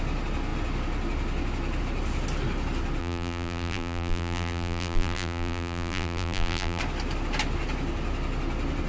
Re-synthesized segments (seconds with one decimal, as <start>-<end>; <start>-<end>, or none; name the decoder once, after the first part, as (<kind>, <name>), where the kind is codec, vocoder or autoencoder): 3.0-6.8 (vocoder, BigVGAN v2)